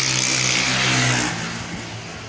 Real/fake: real